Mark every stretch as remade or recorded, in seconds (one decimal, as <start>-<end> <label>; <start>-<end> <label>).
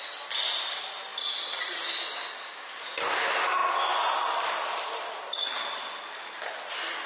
0.0-7.1 recorded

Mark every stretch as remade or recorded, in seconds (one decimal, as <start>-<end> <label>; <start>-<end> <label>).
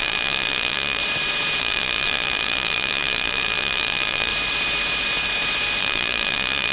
0.0-1.0 remade; 1.0-1.6 recorded; 1.6-4.3 remade; 4.3-5.8 recorded; 5.8-6.7 remade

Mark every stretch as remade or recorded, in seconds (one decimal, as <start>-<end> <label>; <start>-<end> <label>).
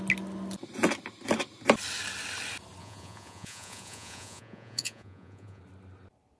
0.0-2.8 recorded; 2.8-5.6 remade; 5.6-6.4 recorded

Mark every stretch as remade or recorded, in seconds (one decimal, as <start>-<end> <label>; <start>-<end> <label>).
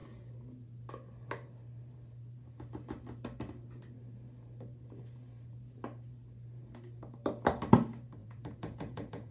0.0-8.2 recorded; 8.2-9.3 remade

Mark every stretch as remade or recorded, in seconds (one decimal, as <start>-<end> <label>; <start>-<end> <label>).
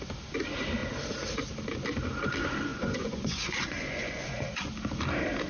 0.0-2.7 recorded; 2.7-4.7 remade; 4.7-5.5 recorded